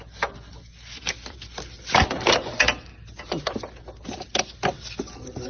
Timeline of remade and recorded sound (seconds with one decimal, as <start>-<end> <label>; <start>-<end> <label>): 0.0-5.5 recorded